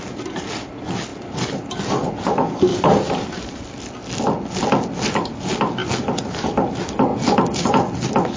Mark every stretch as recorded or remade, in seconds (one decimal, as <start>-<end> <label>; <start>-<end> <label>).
0.0-2.7 recorded; 2.7-3.6 remade; 3.6-7.1 recorded; 7.1-7.9 remade; 7.9-8.4 recorded